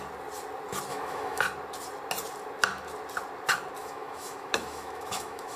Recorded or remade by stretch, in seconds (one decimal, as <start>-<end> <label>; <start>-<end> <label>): 0.0-0.9 recorded; 0.9-1.4 remade; 1.4-3.8 recorded; 3.8-5.6 remade